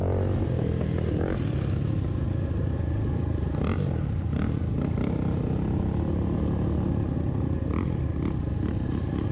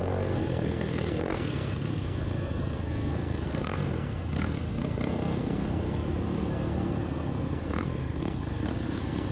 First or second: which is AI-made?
second